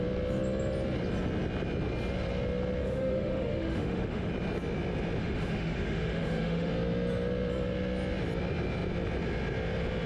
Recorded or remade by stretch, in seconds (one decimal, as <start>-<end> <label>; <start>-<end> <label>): 0.0-2.8 recorded; 2.8-4.3 remade; 4.3-5.2 recorded; 5.2-6.7 remade; 6.7-10.1 recorded

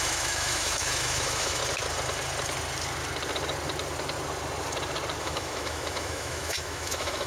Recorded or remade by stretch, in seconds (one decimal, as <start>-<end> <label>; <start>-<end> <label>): 0.0-1.6 remade; 1.6-5.2 recorded; 5.2-7.3 remade

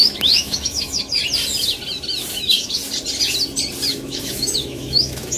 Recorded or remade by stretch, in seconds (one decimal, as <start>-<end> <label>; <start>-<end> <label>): 0.0-1.2 remade; 1.2-2.3 recorded; 2.3-2.8 remade; 2.8-3.9 recorded; 3.9-5.4 remade

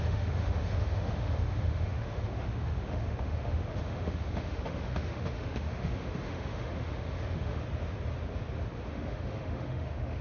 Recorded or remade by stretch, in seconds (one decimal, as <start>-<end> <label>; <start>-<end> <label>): 0.0-7.6 remade; 7.6-8.9 recorded; 8.9-10.2 remade

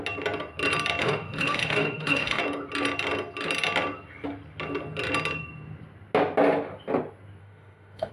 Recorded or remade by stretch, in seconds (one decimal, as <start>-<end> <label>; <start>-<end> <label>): 0.0-1.0 recorded; 1.0-2.4 remade; 2.4-7.4 recorded; 7.4-8.1 remade

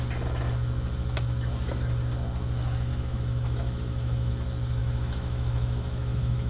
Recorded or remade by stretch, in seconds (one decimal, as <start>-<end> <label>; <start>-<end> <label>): 0.0-2.9 recorded; 2.9-4.3 remade; 4.3-4.8 recorded; 4.8-6.5 remade

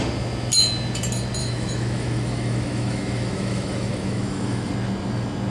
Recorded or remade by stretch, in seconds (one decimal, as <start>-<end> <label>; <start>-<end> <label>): 0.0-1.4 recorded; 1.4-4.7 remade; 4.7-5.5 recorded

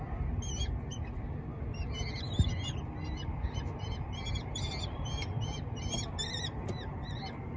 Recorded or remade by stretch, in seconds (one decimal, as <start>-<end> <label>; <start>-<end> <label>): 0.0-7.6 recorded